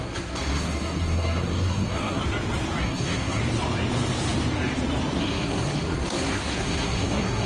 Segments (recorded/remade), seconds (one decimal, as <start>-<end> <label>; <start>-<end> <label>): 0.0-2.2 remade; 2.2-2.8 recorded; 2.8-3.4 remade; 3.4-5.2 recorded; 5.2-7.5 remade